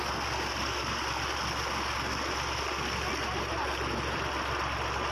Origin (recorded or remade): recorded